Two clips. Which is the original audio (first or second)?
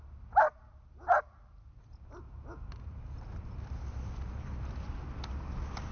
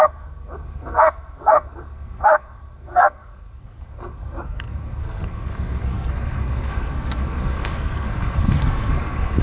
first